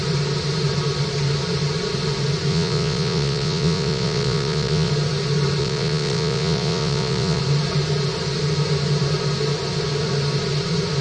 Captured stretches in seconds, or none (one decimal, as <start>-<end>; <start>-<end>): 0.0-2.5; 4.9-5.6; 7.4-11.0